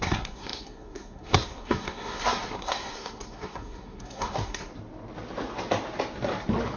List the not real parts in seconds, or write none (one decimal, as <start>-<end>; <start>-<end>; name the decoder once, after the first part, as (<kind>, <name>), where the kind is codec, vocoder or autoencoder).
0.0-4.7 (codec, SNAC)